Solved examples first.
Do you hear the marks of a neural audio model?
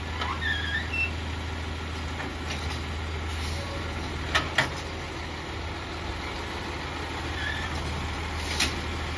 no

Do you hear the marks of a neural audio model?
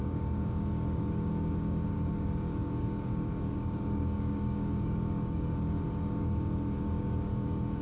yes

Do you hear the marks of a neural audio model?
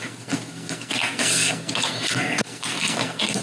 yes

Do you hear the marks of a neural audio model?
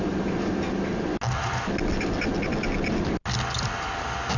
no